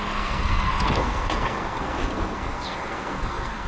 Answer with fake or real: fake